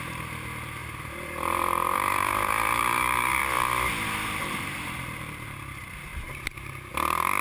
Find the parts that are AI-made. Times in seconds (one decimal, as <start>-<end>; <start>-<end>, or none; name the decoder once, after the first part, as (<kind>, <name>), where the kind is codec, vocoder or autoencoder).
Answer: 0.8-3.4 (vocoder, BigVGAN v2); 4.4-5.0; 6.1-6.9